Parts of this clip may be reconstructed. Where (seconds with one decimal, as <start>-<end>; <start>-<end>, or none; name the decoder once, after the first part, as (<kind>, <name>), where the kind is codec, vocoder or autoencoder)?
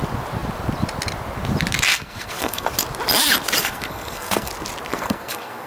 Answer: 1.9-2.7 (codec, SNAC); 3.6-4.5; 4.9-5.7